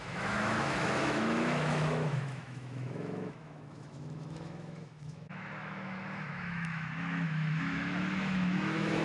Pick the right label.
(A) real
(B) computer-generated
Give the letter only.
B